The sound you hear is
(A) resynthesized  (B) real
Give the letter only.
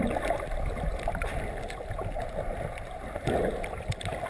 B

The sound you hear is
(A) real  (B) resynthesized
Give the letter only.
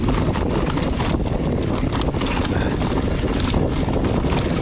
A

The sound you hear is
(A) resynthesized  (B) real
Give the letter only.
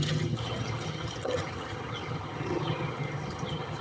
A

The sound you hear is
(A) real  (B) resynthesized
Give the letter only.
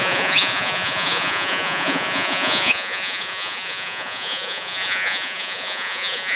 B